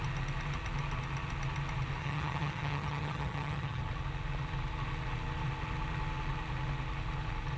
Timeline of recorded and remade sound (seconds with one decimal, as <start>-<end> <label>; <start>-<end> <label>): 0.0-2.0 recorded; 2.0-3.8 remade; 3.8-7.6 recorded